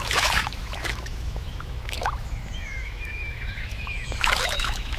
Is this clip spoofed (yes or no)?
yes